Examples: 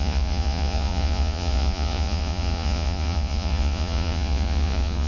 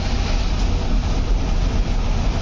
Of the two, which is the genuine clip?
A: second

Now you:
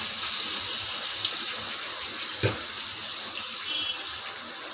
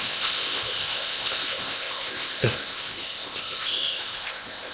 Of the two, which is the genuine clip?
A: first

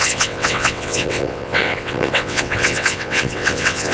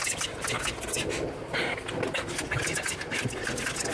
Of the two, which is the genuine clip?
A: second